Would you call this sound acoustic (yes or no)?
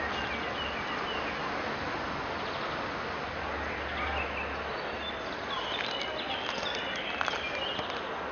yes